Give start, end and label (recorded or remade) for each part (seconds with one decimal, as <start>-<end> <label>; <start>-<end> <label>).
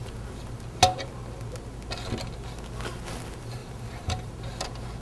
0.0-3.6 recorded; 3.6-4.3 remade; 4.3-5.0 recorded